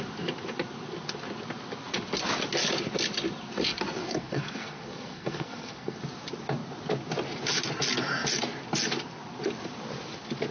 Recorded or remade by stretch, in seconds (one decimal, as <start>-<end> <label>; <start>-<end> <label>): 0.0-4.0 recorded; 4.0-6.0 remade; 6.0-10.5 recorded